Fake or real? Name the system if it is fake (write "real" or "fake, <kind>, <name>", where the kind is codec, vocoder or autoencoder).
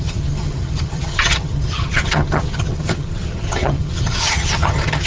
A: fake, vocoder, HiFi-GAN